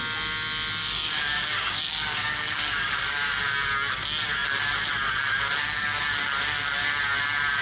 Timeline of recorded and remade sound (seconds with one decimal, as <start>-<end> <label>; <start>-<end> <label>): 0.0-0.8 recorded; 0.8-3.4 remade; 3.4-7.6 recorded